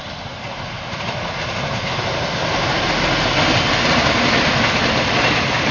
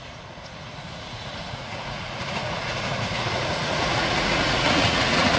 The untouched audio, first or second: first